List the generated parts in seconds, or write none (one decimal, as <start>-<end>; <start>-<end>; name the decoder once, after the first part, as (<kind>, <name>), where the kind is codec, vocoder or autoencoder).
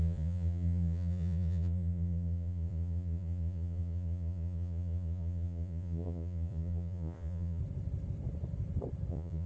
0.0-7.6 (vocoder, Vocos); 9.1-9.5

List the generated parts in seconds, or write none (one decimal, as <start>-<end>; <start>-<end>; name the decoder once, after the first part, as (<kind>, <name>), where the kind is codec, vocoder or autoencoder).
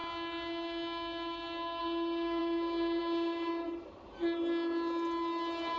none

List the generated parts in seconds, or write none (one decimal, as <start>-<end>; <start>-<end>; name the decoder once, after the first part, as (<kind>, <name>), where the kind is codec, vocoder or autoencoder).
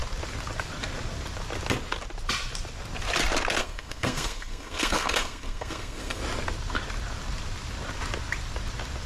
3.6-6.2 (codec, SNAC)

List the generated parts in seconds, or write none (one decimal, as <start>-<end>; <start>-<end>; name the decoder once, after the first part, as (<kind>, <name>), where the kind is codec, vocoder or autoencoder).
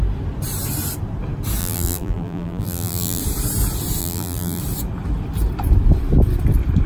1.6-3.2 (vocoder, BigVGAN v2); 4.0-4.6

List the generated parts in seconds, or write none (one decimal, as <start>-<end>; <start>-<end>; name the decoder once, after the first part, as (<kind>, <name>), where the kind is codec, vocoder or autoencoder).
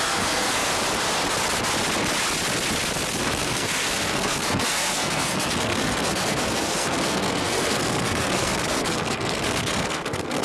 0.0-0.7 (codec, SNAC); 3.2-10.4